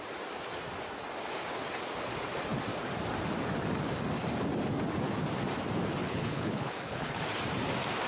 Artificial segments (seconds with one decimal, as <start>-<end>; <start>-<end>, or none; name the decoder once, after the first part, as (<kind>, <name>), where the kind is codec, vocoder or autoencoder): 6.0-7.2 (codec, HILCodec)